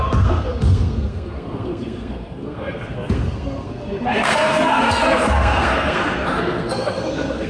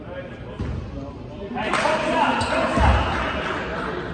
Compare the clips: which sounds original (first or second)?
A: second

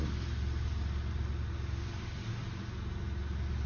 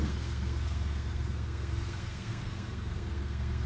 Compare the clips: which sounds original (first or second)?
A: first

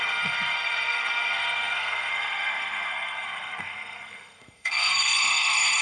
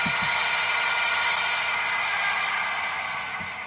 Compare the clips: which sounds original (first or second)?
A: second